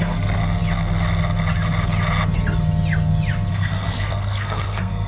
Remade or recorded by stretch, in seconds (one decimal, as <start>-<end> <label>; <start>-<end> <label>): 0.0-0.4 remade; 0.4-3.5 recorded; 3.5-5.1 remade